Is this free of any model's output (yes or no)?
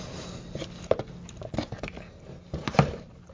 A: yes